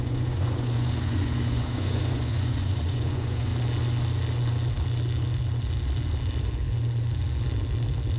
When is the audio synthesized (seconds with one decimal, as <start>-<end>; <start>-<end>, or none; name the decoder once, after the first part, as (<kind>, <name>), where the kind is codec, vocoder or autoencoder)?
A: 0.0-3.5 (vocoder, Vocos)